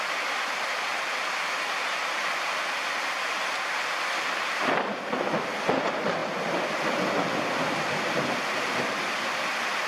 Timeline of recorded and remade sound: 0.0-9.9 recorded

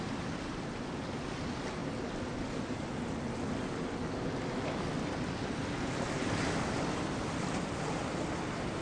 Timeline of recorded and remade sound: 0.0-8.8 recorded

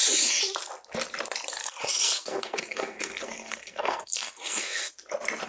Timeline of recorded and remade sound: 0.0-1.6 recorded; 1.6-4.9 remade; 4.9-5.5 recorded

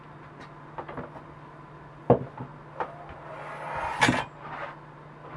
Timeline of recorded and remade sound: 0.0-5.4 recorded